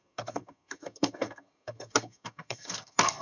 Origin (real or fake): fake